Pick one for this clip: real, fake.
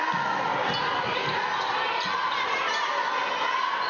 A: real